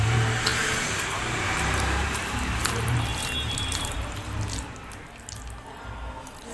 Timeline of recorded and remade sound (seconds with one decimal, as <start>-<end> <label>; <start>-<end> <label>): 0.0-0.5 recorded; 0.5-4.4 remade; 4.4-6.5 recorded